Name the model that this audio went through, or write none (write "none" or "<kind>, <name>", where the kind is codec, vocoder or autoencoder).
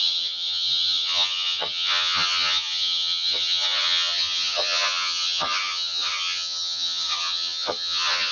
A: vocoder, HiFi-GAN